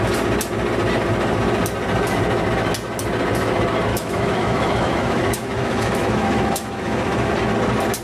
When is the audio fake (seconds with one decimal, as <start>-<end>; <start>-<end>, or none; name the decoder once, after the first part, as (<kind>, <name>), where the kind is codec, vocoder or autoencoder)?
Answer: 3.9-7.3 (autoencoder, DAC-VAE)